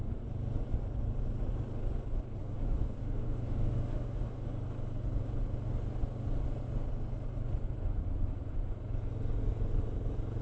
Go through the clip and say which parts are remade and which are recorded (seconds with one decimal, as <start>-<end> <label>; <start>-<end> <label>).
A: 0.0-2.4 recorded; 2.4-4.5 remade; 4.5-10.4 recorded